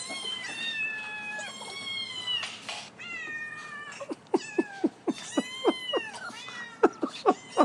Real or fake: real